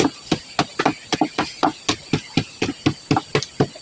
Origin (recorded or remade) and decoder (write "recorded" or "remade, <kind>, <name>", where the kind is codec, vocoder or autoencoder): recorded